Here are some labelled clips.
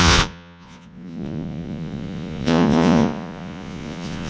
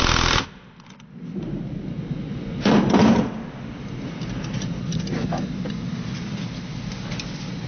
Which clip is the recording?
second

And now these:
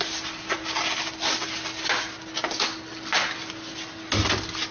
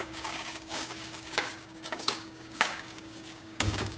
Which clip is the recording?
first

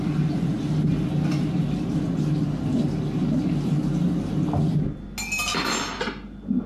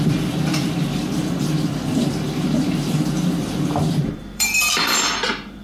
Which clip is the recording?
first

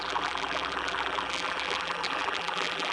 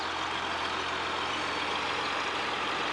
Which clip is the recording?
second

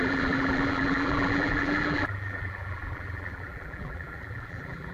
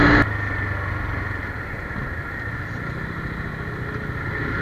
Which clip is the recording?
second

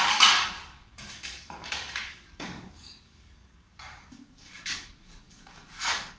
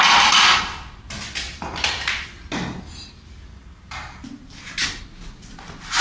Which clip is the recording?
second